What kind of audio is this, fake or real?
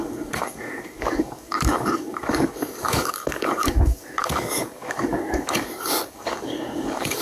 fake